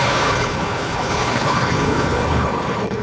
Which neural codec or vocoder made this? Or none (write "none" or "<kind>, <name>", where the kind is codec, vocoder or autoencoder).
codec, HILCodec